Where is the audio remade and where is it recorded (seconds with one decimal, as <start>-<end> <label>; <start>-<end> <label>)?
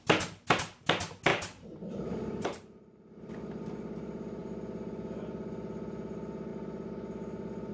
0.0-1.3 recorded; 1.3-3.3 remade; 3.3-7.7 recorded